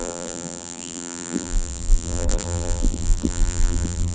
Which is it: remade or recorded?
remade